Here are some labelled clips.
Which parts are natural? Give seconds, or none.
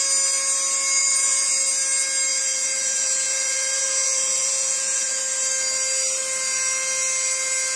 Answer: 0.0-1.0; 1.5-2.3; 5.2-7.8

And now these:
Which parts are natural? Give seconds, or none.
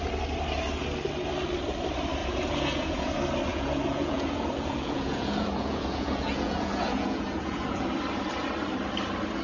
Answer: 0.0-2.2; 3.1-3.5; 7.9-9.4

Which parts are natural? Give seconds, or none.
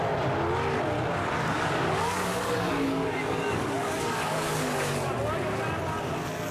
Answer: 0.0-1.2; 5.1-6.5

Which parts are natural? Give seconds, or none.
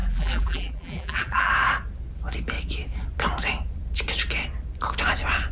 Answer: 1.5-5.5